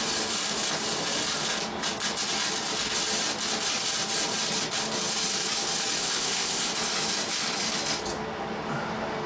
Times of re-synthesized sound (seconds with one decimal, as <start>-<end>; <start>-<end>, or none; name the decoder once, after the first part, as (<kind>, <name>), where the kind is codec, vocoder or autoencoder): 6.0-6.7 (codec, ZipCodec)